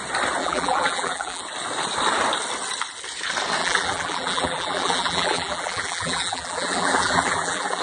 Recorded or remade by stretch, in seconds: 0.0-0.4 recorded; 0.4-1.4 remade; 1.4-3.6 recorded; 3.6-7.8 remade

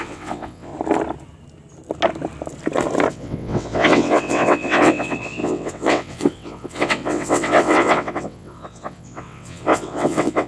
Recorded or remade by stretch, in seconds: 0.0-0.7 remade; 0.7-3.1 recorded; 3.1-10.5 remade

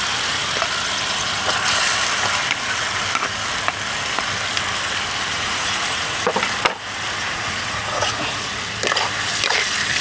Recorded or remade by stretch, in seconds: 0.0-5.3 recorded; 5.3-6.3 remade; 6.3-7.2 recorded; 7.2-8.5 remade; 8.5-10.0 recorded

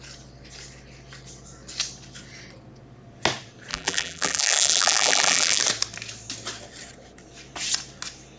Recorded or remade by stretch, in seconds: 0.0-3.7 recorded; 3.7-5.6 remade; 5.6-8.4 recorded

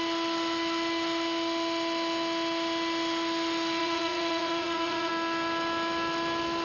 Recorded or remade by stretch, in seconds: 0.0-3.8 recorded; 3.8-5.1 remade; 5.1-6.6 recorded

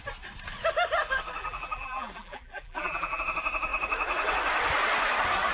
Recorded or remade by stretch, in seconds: 0.0-1.4 recorded; 1.4-3.2 remade; 3.2-5.5 recorded